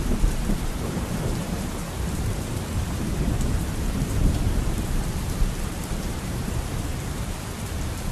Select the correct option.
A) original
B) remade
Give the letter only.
B